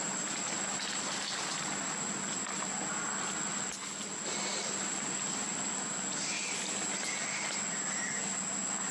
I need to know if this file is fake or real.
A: real